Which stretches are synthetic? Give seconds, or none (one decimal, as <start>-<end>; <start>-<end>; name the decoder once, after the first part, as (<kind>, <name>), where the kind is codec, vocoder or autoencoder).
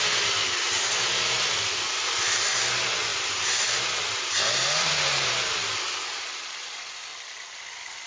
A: 3.1-5.3 (vocoder, BigVGAN v2); 7.1-7.6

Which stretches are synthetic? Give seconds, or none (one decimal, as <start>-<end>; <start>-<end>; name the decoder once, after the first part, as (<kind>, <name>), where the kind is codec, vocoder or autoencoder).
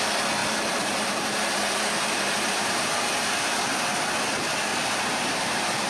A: 0.4-3.1 (vocoder, BigVGAN v2); 4.7-5.9